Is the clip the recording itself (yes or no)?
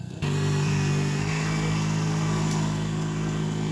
no